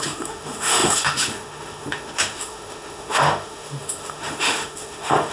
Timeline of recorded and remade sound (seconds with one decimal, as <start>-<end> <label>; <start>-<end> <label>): 0.0-5.3 remade